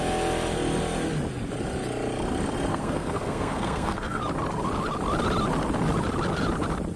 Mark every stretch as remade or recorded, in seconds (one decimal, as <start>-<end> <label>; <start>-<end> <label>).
0.0-2.7 recorded; 2.7-4.2 remade; 4.2-7.0 recorded

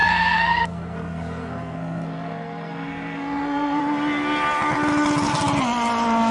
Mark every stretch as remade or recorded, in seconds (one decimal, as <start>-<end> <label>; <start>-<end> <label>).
0.0-3.8 remade; 3.8-6.3 recorded